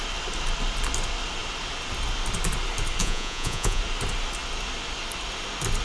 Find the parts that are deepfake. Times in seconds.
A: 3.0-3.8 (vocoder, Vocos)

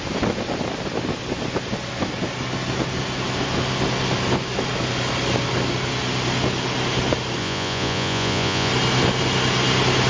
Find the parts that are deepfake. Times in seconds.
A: 7.4-8.7 (vocoder, Vocos)